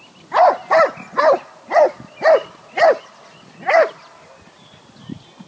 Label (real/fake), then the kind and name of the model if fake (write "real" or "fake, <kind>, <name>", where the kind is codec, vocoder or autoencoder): real